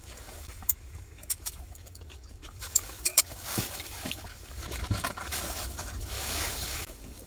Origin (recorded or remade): remade